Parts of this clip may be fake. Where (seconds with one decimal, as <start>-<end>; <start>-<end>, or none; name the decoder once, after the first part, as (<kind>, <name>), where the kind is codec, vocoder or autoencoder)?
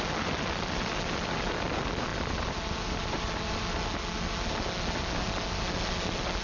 none